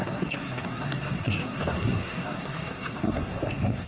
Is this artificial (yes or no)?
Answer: yes